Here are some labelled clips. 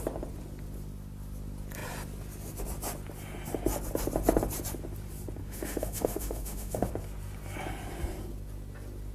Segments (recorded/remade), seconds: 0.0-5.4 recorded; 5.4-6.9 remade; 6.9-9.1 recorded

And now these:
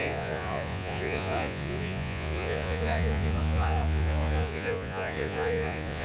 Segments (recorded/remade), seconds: 0.0-6.0 remade

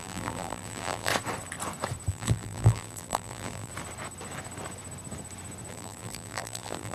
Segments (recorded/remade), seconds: 0.0-1.1 remade; 1.1-2.1 recorded; 2.1-3.7 remade; 3.7-5.7 recorded; 5.7-6.9 remade

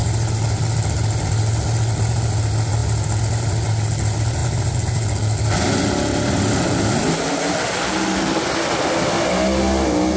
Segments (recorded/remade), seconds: 0.0-10.2 recorded

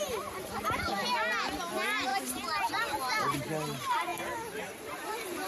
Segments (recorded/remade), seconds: 0.0-5.5 recorded

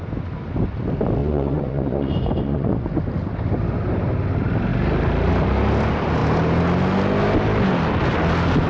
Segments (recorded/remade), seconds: 0.0-1.2 recorded; 1.2-3.0 remade; 3.0-8.7 recorded